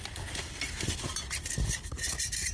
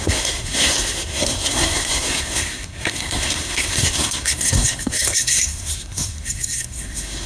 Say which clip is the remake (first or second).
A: second